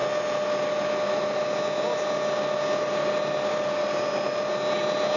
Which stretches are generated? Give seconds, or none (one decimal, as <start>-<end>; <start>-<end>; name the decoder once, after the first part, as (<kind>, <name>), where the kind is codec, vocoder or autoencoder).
none